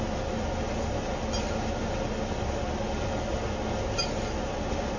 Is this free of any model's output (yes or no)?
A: yes